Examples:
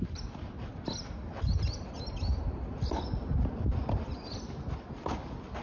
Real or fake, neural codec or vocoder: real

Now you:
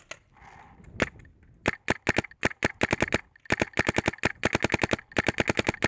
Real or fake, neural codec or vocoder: real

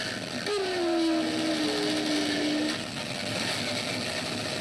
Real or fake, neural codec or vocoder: real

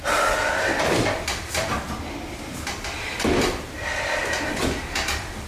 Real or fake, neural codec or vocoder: fake, vocoder, BigVGAN v2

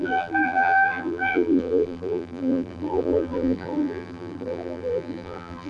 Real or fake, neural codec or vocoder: fake, vocoder, BigVGAN v2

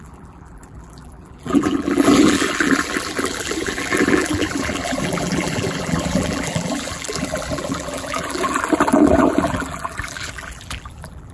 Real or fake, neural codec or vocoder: fake, vocoder, BigVGAN v2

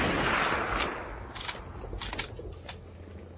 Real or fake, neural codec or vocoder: real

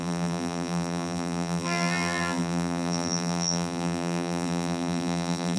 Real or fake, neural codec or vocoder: fake, vocoder, BigVGAN v2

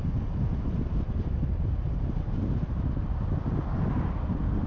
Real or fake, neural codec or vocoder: real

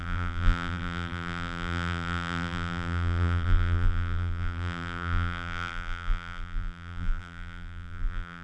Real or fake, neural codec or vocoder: fake, vocoder, BigVGAN v2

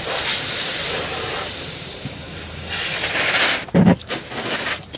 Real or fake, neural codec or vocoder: fake, vocoder, BigVGAN v2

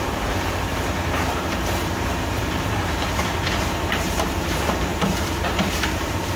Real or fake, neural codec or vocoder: fake, vocoder, BigVGAN v2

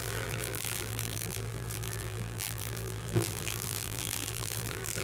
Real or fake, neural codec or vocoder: fake, vocoder, BigVGAN v2